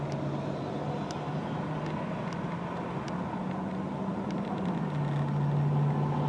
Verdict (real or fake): real